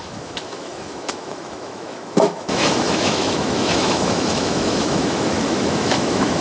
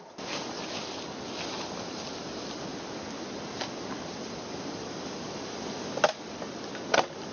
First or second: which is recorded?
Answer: second